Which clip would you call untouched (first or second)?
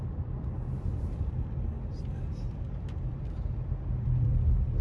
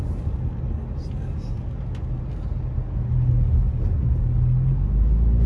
second